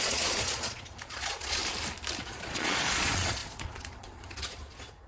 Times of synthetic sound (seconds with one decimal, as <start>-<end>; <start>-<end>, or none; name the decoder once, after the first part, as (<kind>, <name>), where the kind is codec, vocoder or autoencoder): 0.0-1.6 (vocoder, Vocos); 2.2-5.1